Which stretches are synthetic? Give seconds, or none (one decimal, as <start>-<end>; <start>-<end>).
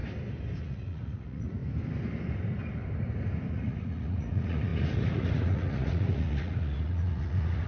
0.6-1.6; 3.5-7.7